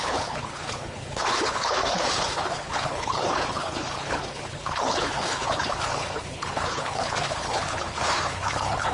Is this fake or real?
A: fake